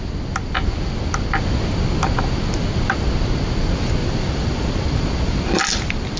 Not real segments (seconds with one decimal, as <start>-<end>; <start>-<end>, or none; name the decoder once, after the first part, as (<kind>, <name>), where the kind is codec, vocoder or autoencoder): 4.0-6.2 (vocoder, BigVGAN v2)